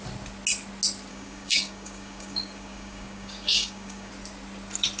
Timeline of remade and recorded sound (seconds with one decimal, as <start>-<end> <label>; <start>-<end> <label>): 0.0-1.1 recorded; 1.1-4.1 remade; 4.1-5.0 recorded